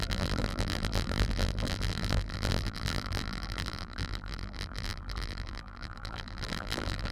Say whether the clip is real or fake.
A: fake